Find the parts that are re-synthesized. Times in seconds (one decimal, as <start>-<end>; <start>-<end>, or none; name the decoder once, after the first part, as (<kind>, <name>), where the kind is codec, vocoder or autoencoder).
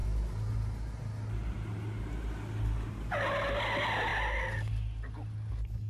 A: none